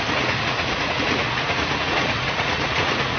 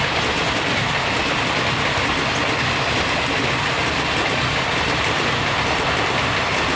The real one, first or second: second